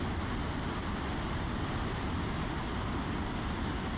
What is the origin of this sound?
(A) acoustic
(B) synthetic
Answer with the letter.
A